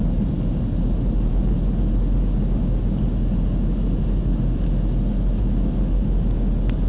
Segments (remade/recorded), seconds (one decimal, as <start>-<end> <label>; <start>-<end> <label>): 0.0-6.9 recorded